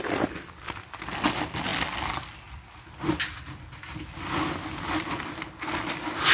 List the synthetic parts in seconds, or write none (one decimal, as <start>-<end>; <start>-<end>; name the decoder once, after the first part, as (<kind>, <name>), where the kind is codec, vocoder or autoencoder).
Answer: none